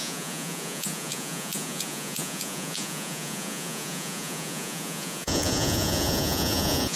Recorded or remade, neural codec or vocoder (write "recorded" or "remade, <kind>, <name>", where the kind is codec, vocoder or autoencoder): remade, vocoder, Vocos